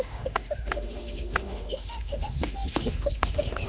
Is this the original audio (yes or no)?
no